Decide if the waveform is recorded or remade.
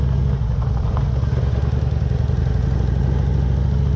recorded